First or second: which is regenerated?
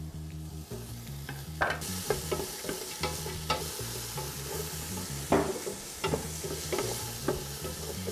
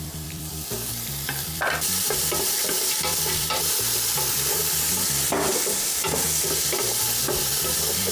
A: second